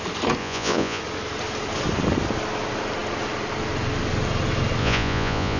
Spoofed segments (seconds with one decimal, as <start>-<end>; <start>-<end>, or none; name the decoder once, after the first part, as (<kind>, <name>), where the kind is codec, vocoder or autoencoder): 0.4-1.0 (vocoder, Vocos); 4.8-5.6